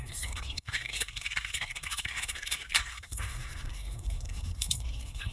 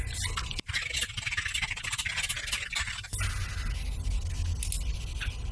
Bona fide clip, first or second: second